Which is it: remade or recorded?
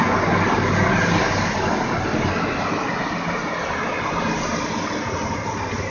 recorded